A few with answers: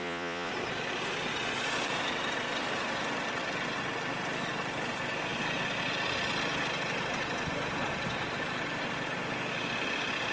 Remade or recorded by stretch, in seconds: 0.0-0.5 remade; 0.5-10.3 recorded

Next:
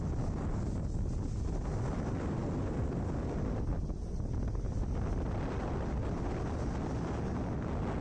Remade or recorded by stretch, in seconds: 0.0-8.0 recorded

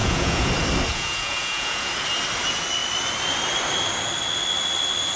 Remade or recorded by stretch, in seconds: 0.0-0.5 remade; 0.5-0.9 recorded; 0.9-1.9 remade; 1.9-5.2 recorded